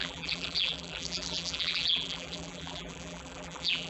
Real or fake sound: fake